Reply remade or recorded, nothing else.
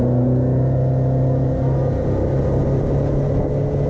recorded